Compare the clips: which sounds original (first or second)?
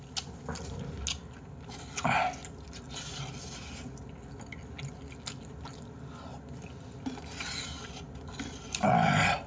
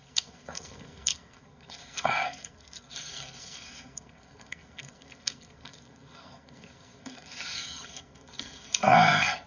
first